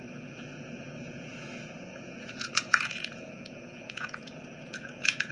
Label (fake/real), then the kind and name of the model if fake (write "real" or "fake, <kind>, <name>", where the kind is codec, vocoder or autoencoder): fake, vocoder, Vocos